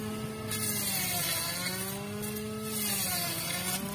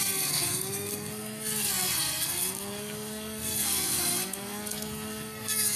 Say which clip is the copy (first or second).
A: second